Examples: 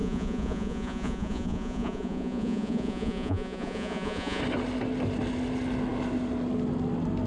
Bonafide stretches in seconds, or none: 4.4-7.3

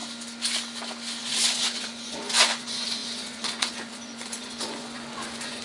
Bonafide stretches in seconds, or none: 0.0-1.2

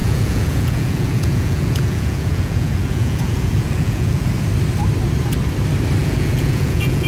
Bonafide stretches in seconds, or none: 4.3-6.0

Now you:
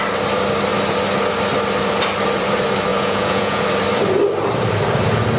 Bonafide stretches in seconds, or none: 0.0-2.9; 3.6-5.4

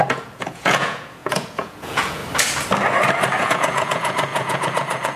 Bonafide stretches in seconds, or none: 2.2-3.4